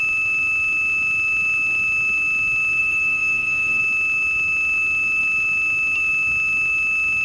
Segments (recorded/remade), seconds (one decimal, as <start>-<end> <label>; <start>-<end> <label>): 0.0-2.8 recorded; 2.8-3.8 remade; 3.8-7.2 recorded